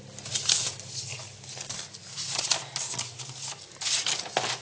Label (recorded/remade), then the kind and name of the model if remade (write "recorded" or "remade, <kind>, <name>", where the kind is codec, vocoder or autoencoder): recorded